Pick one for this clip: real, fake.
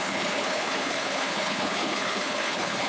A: fake